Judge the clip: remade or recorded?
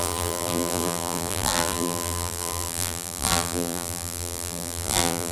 remade